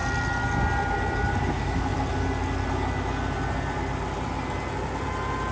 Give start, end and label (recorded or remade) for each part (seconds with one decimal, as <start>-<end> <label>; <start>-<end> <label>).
0.0-1.5 recorded; 1.5-1.9 remade; 1.9-5.5 recorded